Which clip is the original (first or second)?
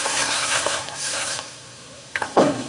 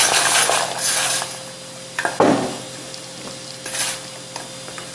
second